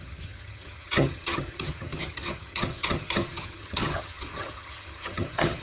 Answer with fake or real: fake